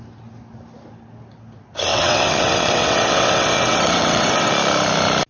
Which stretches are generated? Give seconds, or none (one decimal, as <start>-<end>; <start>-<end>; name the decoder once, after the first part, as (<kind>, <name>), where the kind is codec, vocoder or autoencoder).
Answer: 1.9-4.5 (vocoder, WaveNeXt)